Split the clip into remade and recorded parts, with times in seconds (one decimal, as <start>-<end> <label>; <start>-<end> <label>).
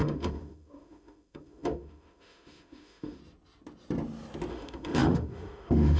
0.0-3.2 remade; 3.2-4.5 recorded; 4.5-6.0 remade